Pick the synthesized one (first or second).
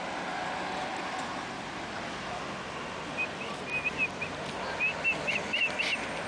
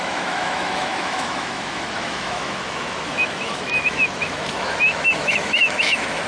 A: second